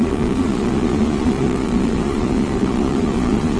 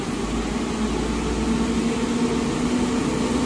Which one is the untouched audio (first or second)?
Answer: second